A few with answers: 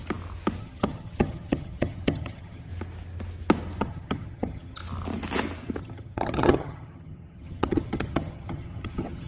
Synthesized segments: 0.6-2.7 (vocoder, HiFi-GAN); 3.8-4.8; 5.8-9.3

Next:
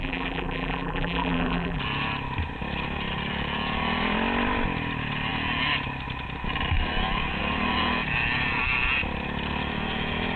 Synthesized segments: 0.0-1.8 (vocoder, BigVGAN v2)